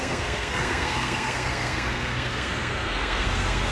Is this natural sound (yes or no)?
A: no